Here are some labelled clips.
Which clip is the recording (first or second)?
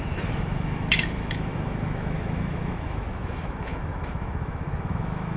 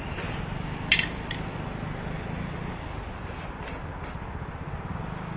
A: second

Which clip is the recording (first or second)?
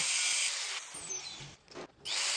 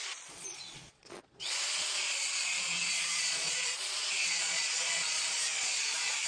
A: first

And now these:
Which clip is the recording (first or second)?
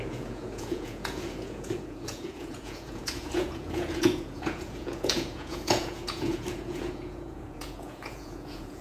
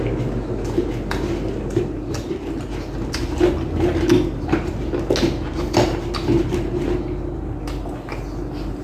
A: second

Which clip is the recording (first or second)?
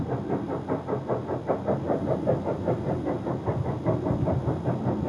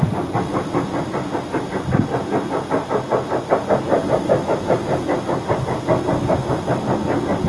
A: second